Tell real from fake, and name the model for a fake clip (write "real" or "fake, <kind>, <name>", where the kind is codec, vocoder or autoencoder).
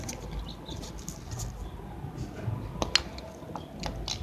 real